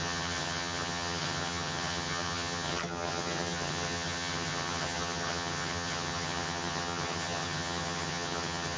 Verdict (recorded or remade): remade